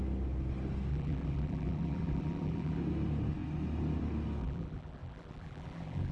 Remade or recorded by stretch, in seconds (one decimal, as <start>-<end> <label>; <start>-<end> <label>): 0.0-0.9 recorded; 0.9-2.8 remade; 2.8-4.4 recorded; 4.4-6.1 remade